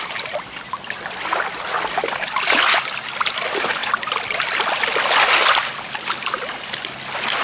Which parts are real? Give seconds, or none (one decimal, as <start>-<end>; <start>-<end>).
0.0-7.4